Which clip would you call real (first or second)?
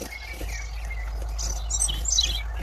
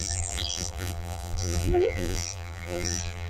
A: first